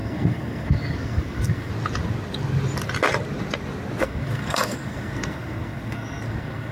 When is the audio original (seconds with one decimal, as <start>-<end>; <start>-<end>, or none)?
1.7-4.0